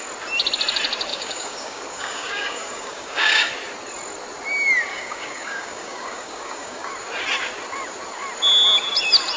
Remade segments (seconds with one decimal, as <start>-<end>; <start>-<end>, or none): 1.1-3.5; 4.9-6.9